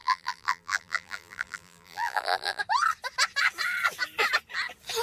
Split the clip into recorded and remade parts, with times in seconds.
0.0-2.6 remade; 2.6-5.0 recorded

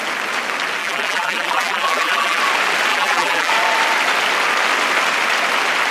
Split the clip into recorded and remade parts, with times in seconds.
0.0-0.8 recorded; 0.8-2.4 remade; 2.4-2.9 recorded; 2.9-3.5 remade; 3.5-5.9 recorded

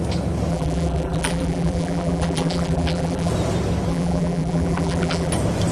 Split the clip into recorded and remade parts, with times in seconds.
0.0-0.5 recorded; 0.5-3.3 remade; 3.3-3.9 recorded; 3.9-5.3 remade; 5.3-5.7 recorded

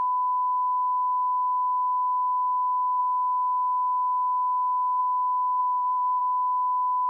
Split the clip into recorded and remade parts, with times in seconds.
0.0-5.6 recorded; 5.6-6.2 remade; 6.2-7.1 recorded

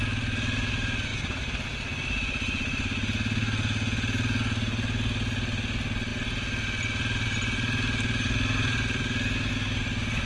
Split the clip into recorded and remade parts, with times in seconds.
0.0-1.1 recorded; 1.1-1.7 remade; 1.7-10.3 recorded

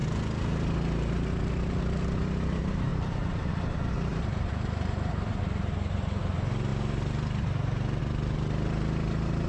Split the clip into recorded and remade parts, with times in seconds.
0.0-2.9 recorded; 2.9-3.5 remade; 3.5-4.1 recorded; 4.1-5.4 remade; 5.4-9.5 recorded